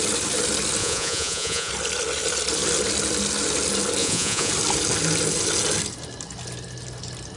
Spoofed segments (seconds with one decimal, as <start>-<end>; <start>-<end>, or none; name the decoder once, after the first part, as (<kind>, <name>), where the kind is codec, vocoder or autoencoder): 0.8-1.7 (vocoder, Vocos); 4.0-4.5